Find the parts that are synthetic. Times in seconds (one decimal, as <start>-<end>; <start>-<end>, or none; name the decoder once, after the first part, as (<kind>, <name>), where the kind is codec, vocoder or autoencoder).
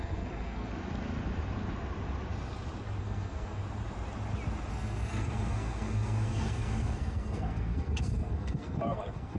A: 0.0-0.7 (codec, SNAC); 3.0-3.6; 4.7-9.4